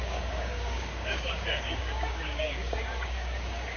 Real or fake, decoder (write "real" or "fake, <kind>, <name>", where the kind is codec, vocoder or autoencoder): fake, codec, DAC